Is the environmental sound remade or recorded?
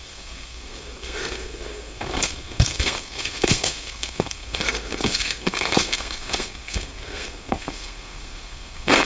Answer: remade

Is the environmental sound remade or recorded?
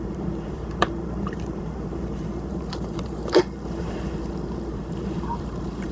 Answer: remade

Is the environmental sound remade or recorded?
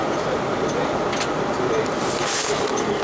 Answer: recorded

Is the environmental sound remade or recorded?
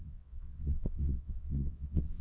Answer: remade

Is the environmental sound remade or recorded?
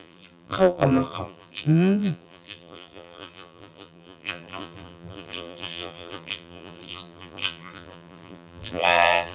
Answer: remade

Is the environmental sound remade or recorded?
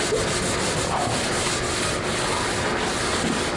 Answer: recorded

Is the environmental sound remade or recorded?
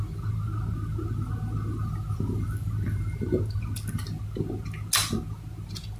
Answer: recorded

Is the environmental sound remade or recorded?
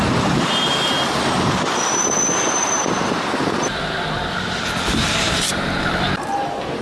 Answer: remade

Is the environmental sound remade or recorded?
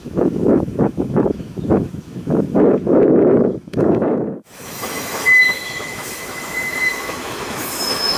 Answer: remade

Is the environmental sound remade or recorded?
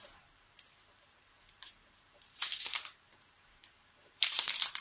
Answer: remade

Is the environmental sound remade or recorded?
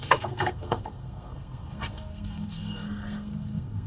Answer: remade